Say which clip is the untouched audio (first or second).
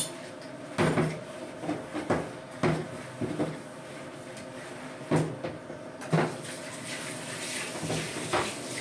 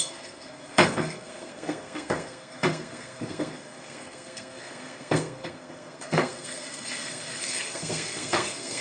first